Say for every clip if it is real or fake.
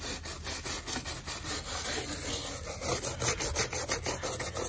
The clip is real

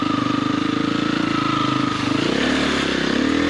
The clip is real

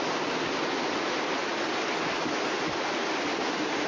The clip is real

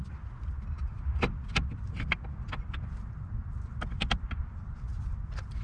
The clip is real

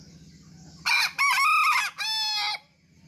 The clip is real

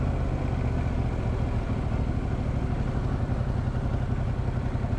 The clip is real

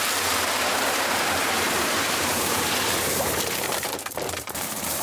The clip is fake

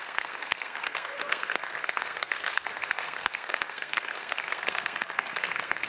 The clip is fake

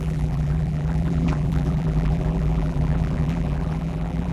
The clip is fake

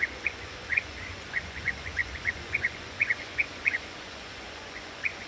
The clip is fake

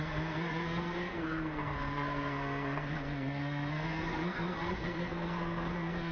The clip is fake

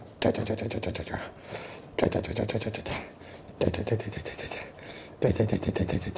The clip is real